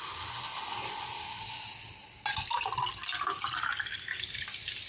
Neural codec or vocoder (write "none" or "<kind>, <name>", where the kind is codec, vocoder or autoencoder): none